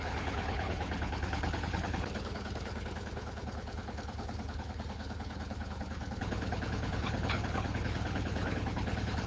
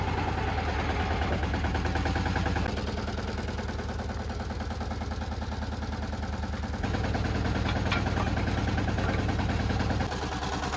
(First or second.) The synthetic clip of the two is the first